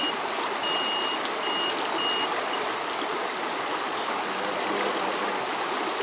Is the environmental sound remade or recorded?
recorded